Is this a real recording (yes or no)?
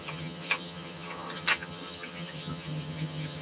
no